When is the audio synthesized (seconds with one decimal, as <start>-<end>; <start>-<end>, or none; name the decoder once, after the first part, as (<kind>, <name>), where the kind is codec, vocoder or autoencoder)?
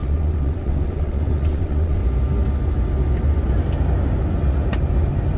0.0-2.0 (vocoder, WaveNeXt)